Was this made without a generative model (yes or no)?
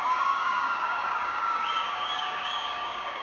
no